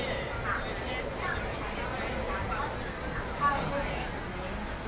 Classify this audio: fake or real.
real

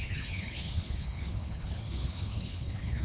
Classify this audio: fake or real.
fake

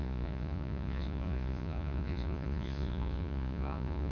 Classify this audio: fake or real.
fake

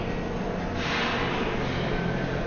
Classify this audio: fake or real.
real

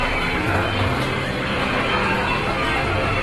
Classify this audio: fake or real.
real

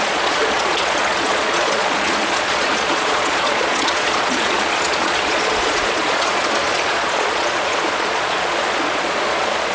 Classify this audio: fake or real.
fake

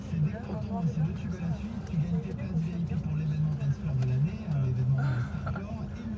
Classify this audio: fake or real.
real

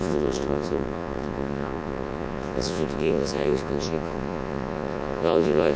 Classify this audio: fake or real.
fake